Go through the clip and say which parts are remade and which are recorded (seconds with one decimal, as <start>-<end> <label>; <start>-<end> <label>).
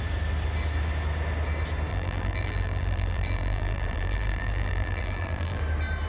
0.0-1.9 recorded; 1.9-5.6 remade; 5.6-6.1 recorded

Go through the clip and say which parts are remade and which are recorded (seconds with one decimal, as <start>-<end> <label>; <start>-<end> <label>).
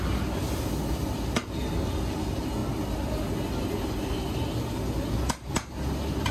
0.0-6.3 recorded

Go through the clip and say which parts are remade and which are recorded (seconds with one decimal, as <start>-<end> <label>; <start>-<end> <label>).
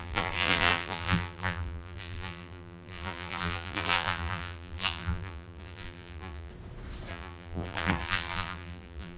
0.0-6.5 remade; 6.5-7.1 recorded; 7.1-9.2 remade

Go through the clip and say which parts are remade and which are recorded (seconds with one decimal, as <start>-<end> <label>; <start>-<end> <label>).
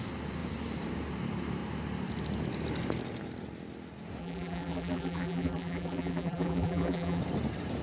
0.0-4.2 recorded; 4.2-7.2 remade; 7.2-7.8 recorded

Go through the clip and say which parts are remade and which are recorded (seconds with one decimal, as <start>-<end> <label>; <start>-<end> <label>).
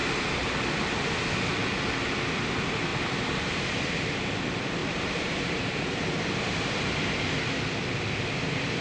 0.0-0.8 remade; 0.8-2.9 recorded; 2.9-4.1 remade; 4.1-4.8 recorded; 4.8-7.6 remade; 7.6-8.8 recorded